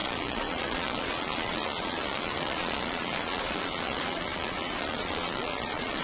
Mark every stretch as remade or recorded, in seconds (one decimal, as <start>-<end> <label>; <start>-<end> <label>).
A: 0.0-6.0 remade